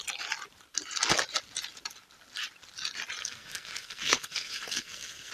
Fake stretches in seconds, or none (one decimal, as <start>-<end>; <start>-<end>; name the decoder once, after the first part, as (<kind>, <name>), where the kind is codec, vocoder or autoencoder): 3.2-5.3 (codec, SNAC)